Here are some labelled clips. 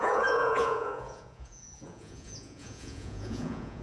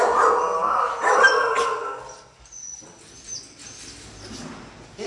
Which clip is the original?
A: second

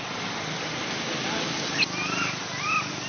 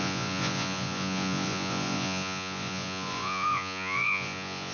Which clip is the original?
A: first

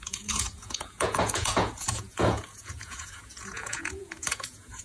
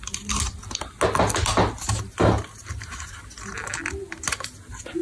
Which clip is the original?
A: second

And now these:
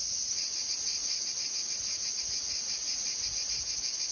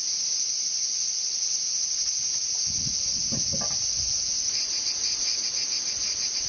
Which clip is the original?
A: second